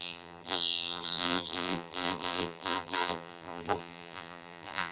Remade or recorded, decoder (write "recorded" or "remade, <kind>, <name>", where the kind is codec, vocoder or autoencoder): remade, vocoder, BigVGAN v2